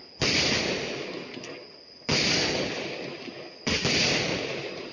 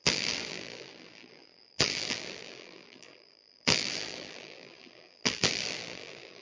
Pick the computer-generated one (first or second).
second